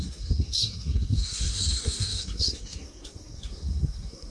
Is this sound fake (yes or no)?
yes